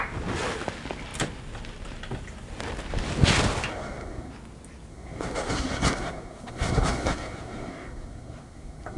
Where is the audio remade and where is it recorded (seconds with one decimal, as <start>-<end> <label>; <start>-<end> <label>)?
0.0-3.7 recorded; 3.7-4.3 remade; 4.3-4.9 recorded; 4.9-9.0 remade